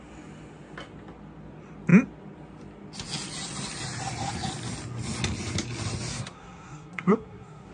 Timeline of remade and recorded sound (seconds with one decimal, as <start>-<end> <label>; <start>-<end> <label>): 0.0-6.1 recorded; 6.1-7.7 remade